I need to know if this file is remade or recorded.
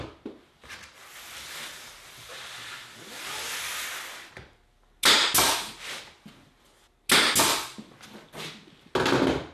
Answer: recorded